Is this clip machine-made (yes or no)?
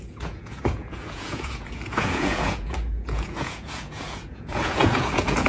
yes